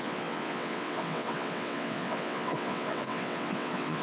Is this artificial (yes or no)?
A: yes